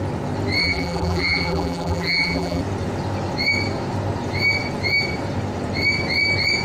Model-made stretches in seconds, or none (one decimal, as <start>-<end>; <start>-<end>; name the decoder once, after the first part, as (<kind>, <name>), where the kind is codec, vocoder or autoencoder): 0.6-2.6 (vocoder, BigVGAN v2)